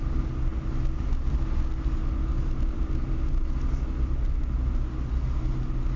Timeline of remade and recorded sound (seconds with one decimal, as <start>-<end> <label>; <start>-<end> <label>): 0.0-6.0 recorded